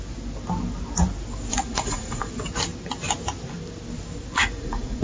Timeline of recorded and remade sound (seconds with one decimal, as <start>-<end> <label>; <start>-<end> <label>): 0.0-1.5 recorded; 1.5-2.3 remade; 2.3-4.3 recorded; 4.3-5.0 remade